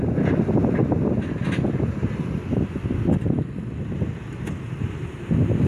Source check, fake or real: real